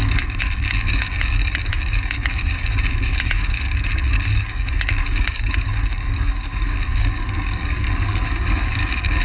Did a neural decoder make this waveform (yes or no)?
yes